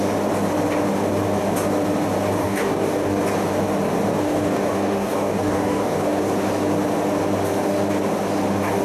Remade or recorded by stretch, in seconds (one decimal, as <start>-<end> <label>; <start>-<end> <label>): 0.0-2.4 recorded; 2.4-3.2 remade; 3.2-4.1 recorded; 4.1-6.2 remade; 6.2-8.8 recorded